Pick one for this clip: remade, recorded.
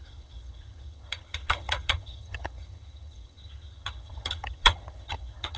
remade